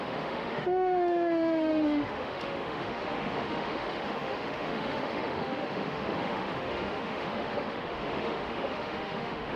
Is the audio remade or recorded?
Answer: remade